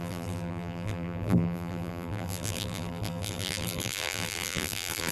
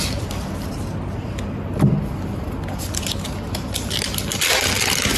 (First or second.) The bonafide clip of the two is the second